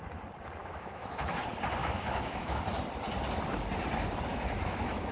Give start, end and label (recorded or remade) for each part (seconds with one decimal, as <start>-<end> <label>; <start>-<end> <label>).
0.0-0.6 recorded; 0.6-1.4 remade; 1.4-1.8 recorded; 1.8-2.6 remade; 2.6-4.3 recorded; 4.3-5.1 remade